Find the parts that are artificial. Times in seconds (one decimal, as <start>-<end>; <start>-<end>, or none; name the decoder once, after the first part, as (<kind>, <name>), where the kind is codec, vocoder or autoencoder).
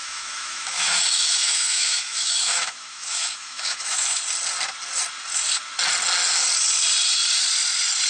0.0-4.2 (autoencoder, DAC-VAE)